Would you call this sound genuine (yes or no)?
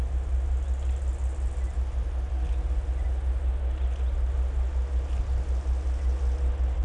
yes